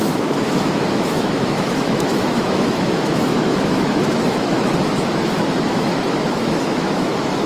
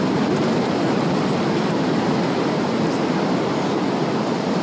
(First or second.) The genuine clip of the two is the second